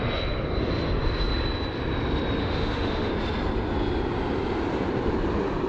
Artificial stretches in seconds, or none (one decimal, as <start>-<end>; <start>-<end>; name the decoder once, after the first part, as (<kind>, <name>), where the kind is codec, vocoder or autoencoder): 2.4-3.1 (autoencoder, DAC-VAE)